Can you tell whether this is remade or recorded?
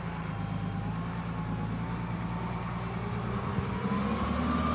recorded